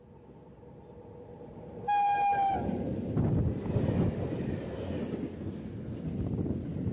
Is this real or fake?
real